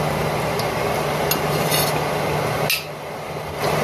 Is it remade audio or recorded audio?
recorded